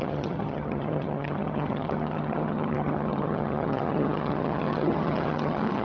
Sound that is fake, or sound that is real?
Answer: fake